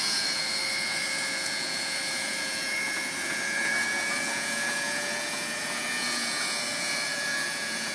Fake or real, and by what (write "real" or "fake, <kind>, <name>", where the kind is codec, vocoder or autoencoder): fake, vocoder, Vocos